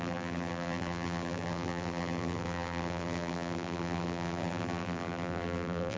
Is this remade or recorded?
remade